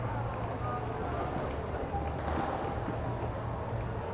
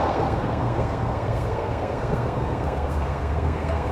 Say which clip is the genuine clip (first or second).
first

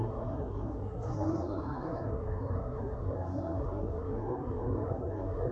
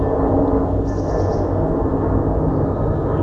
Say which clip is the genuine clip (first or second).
second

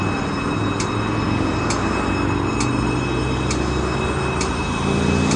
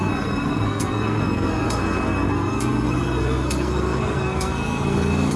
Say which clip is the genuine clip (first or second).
first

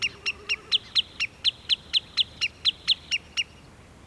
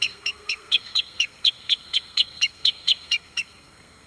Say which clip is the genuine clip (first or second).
first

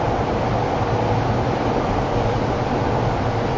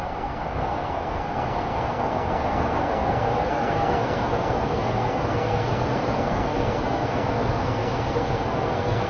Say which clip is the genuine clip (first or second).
first